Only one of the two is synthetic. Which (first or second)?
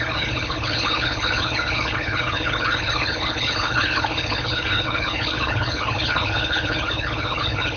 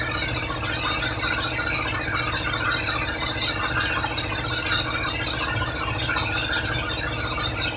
first